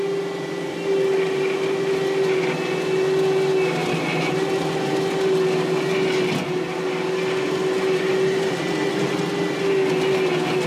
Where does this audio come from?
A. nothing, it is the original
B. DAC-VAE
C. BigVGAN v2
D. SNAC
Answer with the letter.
A